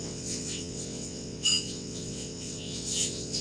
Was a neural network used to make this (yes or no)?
yes